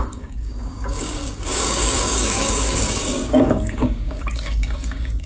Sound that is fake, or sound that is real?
fake